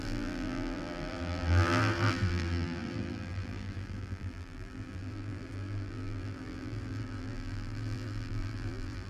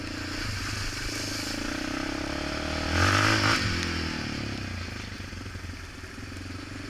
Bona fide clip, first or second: second